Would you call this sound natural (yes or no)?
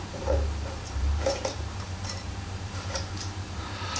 no